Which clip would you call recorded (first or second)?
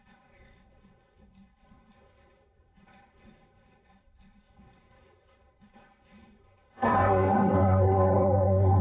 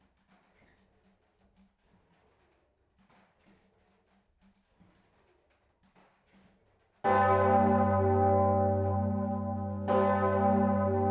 second